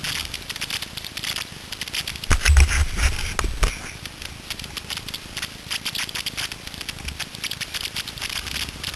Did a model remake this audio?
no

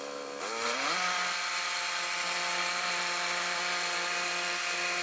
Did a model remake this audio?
no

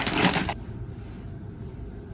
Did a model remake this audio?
yes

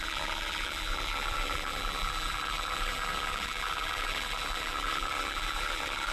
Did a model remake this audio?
yes